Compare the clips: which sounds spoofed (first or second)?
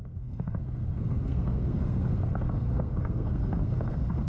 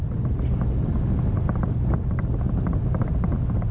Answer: first